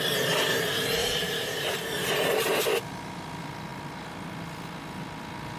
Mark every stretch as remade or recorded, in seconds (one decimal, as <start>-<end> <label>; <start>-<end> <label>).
0.0-1.0 recorded; 1.0-2.6 remade; 2.6-5.6 recorded